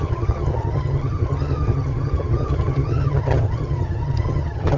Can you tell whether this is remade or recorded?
remade